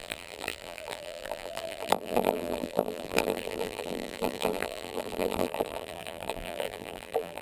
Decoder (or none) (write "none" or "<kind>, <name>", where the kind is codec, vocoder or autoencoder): vocoder, BigVGAN v2